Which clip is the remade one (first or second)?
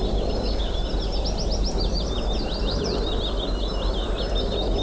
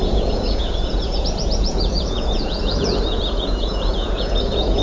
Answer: second